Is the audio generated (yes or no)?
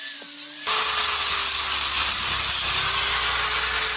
no